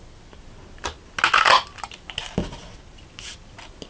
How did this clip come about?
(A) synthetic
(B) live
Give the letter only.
B